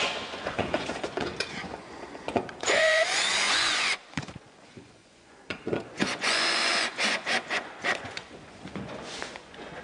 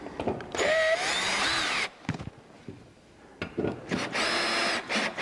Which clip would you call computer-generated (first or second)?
first